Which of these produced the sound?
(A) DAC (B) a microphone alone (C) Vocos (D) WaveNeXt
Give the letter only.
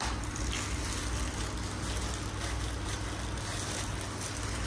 B